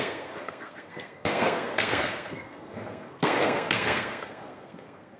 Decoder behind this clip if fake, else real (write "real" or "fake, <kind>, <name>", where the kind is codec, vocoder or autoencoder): fake, codec, SNAC